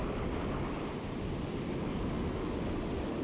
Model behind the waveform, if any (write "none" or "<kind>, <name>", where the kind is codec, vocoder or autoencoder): none